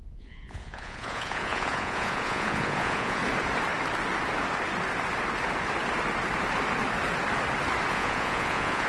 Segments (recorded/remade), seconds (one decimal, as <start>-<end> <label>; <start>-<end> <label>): 0.0-3.2 remade; 3.2-7.9 recorded; 7.9-8.9 remade